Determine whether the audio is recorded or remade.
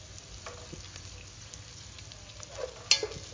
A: recorded